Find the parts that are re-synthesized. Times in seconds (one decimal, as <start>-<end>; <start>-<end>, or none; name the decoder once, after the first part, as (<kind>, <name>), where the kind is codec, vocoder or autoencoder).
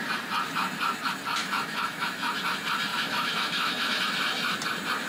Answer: 1.4-2.3 (autoencoder, DAC-VAE); 2.9-4.0